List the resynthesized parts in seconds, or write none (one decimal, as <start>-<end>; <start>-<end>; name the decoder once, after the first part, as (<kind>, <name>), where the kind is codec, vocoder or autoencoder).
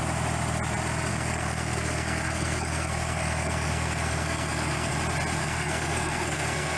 1.1-4.9 (codec, SNAC); 5.4-6.8